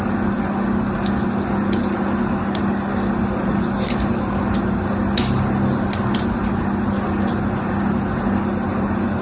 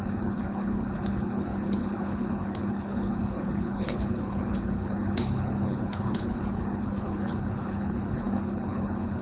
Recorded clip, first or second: first